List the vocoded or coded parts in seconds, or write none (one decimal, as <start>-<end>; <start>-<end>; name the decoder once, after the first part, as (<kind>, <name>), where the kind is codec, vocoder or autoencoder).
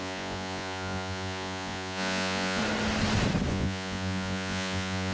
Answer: 0.0-2.6 (vocoder, Vocos); 3.5-5.1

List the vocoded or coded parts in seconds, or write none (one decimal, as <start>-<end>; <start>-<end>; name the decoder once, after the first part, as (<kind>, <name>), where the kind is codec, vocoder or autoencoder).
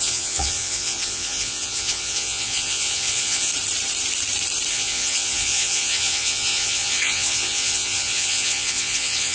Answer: 0.0-3.5 (vocoder, Vocos); 4.7-9.3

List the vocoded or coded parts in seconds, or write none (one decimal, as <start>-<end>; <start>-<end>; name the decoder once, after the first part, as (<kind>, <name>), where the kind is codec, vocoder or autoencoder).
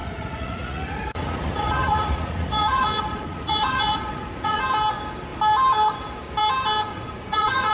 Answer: 0.0-4.6 (vocoder, Vocos); 6.9-7.7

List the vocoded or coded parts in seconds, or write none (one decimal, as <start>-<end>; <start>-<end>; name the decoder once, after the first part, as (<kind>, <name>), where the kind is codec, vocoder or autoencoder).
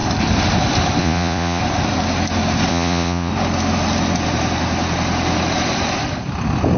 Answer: 1.0-1.6 (vocoder, Vocos); 2.7-3.3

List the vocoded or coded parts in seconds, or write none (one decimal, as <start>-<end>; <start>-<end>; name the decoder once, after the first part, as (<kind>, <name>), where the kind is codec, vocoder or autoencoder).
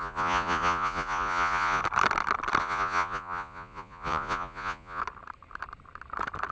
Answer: 0.0-1.8 (vocoder, Vocos); 2.6-5.0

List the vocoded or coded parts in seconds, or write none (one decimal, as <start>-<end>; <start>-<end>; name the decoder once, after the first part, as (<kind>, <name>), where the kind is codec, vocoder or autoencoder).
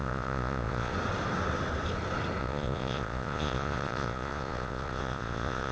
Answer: 0.0-0.9 (vocoder, Vocos); 2.4-5.7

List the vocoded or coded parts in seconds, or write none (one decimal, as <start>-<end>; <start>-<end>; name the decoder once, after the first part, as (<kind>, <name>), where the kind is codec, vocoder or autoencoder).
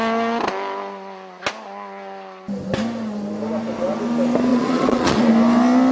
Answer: 4.5-5.3 (vocoder, Vocos)